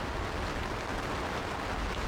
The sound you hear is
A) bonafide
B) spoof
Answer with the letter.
A